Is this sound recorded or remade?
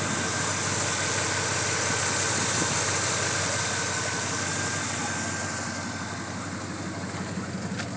recorded